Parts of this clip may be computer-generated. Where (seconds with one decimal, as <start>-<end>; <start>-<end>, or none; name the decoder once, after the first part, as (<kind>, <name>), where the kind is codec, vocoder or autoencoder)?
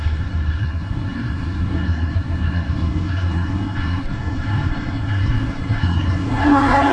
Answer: 0.0-6.9 (codec, SNAC)